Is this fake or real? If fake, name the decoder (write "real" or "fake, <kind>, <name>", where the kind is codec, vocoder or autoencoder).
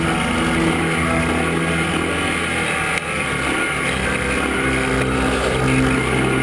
real